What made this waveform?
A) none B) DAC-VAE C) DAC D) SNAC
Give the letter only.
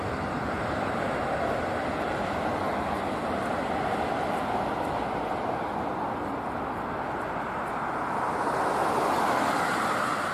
A